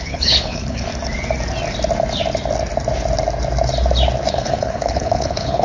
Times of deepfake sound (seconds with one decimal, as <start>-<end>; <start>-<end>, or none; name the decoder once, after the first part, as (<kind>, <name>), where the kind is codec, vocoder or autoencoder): 0.0-0.9 (codec, HILCodec); 4.3-5.6